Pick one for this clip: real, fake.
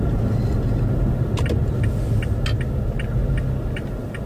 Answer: real